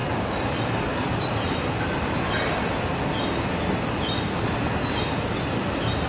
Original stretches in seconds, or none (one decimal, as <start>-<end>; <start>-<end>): 0.0-6.1